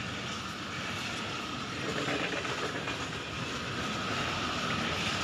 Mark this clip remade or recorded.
recorded